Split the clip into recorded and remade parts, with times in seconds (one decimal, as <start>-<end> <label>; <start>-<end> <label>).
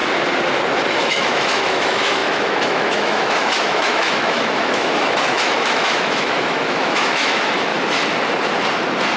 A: 0.0-0.9 recorded; 0.9-7.7 remade; 7.7-9.2 recorded